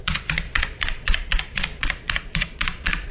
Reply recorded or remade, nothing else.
remade